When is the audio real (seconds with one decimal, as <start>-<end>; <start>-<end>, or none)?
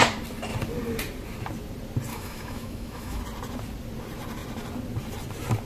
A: 0.0-2.1; 3.2-5.7